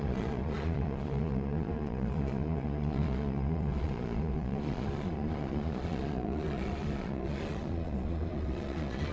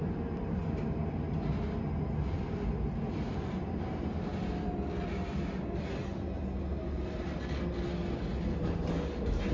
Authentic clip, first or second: second